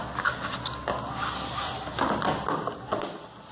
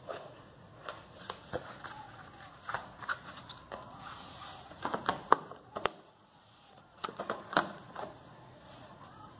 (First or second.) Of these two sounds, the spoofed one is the second